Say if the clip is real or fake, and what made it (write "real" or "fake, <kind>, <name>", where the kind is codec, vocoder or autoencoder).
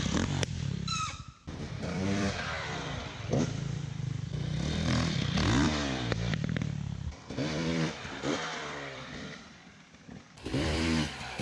fake, vocoder, BigVGAN v2